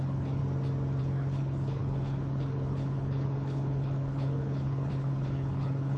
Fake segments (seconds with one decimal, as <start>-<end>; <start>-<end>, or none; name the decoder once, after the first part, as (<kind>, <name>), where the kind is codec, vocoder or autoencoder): 0.0-0.4 (codec, HILCodec); 1.0-6.0